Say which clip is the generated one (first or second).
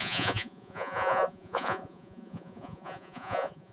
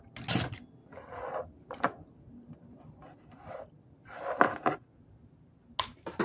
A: first